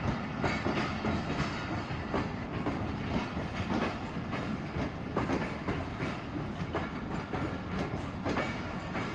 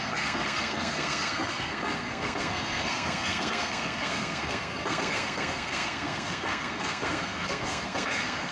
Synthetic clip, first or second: second